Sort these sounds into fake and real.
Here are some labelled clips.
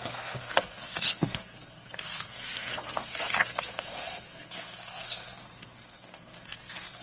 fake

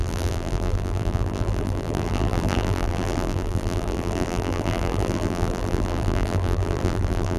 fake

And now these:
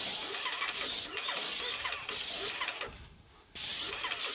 real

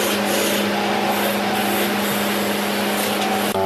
real